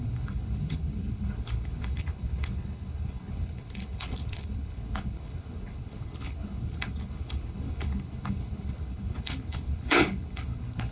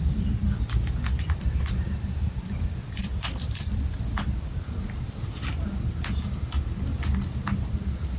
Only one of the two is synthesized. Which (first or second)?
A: first